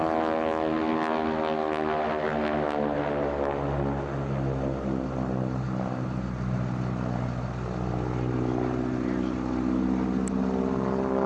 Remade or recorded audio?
recorded